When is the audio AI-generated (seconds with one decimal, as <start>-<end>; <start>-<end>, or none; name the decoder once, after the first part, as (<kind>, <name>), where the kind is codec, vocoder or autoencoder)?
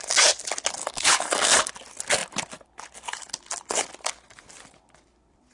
0.8-1.7 (codec, DAC)